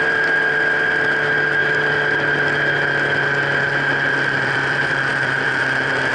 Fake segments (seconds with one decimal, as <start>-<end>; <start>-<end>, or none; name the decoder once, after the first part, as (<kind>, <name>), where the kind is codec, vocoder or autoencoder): 0.0-1.6 (vocoder, BigVGAN v2); 3.9-6.1